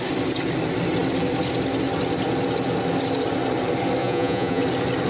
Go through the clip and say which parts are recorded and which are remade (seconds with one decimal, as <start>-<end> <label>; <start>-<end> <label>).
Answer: 0.0-4.0 recorded; 4.0-4.6 remade; 4.6-5.1 recorded